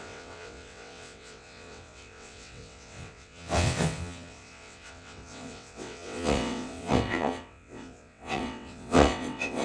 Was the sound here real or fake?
fake